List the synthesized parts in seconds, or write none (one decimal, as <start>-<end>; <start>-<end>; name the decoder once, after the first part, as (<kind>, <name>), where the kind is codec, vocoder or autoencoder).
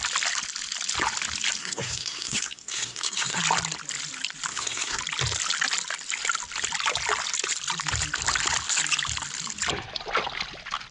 1.6-3.4 (codec, SNAC); 4.5-5.0